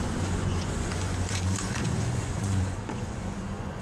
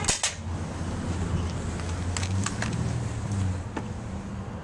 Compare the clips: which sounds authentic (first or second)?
second